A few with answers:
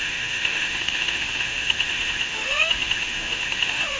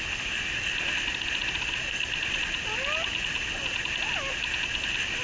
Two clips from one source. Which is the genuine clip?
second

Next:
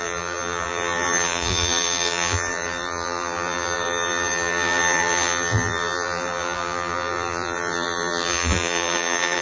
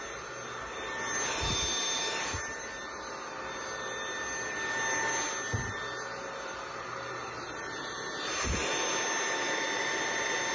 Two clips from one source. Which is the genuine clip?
second